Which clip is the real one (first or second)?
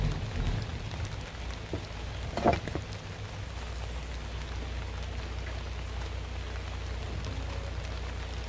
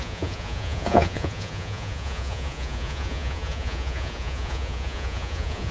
first